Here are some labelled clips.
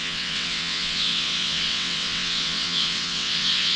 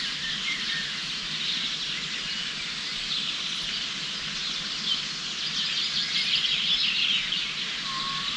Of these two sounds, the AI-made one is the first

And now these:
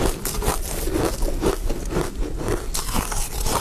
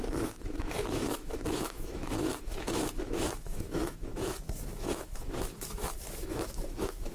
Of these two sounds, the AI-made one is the second